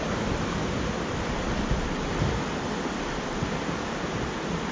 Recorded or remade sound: recorded